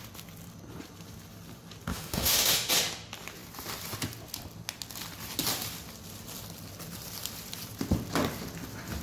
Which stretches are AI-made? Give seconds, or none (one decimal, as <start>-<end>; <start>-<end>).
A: 1.9-2.7